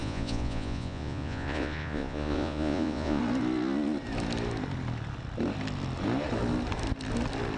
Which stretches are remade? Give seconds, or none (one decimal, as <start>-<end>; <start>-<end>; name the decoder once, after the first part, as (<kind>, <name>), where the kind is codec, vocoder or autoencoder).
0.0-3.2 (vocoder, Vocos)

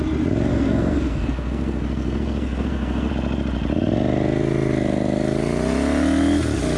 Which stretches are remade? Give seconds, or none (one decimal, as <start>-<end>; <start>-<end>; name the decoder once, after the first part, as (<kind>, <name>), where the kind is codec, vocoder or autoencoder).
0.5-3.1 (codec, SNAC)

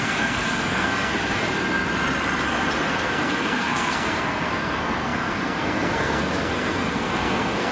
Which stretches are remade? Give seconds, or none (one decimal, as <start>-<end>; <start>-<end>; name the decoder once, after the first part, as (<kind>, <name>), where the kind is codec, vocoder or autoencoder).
0.0-1.1 (codec, SNAC); 2.9-7.7

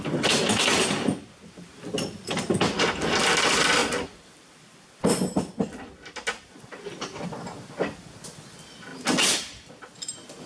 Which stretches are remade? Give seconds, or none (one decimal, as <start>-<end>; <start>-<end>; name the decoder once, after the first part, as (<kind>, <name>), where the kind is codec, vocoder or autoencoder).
none

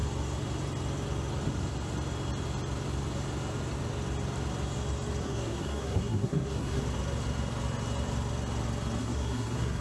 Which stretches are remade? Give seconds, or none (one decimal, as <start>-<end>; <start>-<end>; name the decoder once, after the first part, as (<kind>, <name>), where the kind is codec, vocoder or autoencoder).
5.2-6.8 (codec, SNAC); 9.0-9.8

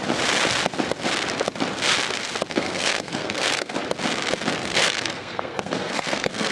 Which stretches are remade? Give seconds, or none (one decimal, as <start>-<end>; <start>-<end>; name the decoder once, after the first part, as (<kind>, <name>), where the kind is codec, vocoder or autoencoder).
2.5-3.8 (codec, SNAC); 4.6-6.5

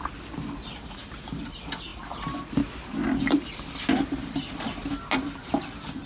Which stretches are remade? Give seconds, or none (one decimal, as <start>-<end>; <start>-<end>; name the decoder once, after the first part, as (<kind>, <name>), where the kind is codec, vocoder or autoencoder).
none